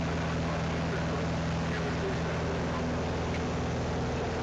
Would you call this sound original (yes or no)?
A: yes